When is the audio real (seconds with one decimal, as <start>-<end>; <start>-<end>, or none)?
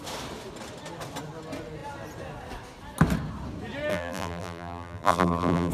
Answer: 0.0-3.9